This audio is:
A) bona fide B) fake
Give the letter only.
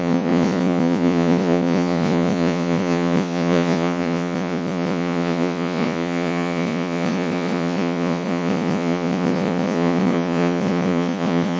B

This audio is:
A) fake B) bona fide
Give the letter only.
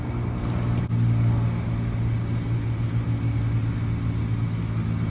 B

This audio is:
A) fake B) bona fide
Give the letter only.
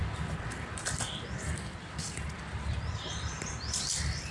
A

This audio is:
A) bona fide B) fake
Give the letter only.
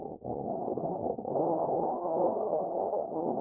B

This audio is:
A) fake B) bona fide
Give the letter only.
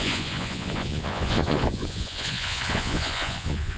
A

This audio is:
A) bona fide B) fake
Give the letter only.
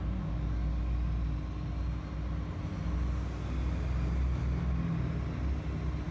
A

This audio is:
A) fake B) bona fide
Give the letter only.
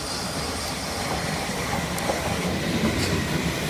A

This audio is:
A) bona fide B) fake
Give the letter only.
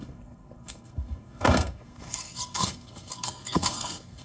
B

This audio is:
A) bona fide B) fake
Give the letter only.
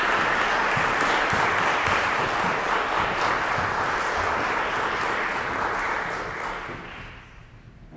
A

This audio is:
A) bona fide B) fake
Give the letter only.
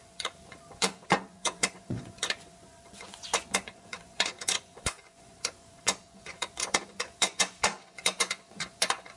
B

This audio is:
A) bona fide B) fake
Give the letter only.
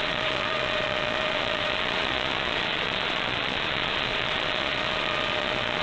B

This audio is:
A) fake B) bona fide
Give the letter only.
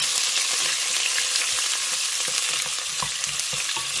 B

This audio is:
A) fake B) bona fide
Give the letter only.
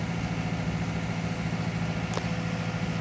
B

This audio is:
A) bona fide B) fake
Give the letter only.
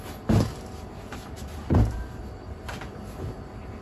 A